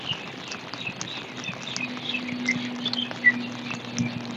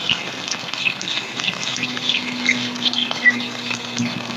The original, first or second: first